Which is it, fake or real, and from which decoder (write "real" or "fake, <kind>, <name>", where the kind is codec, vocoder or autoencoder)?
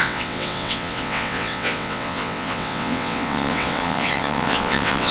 fake, vocoder, WaveNeXt